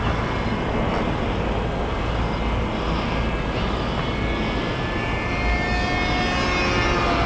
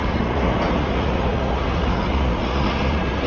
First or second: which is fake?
second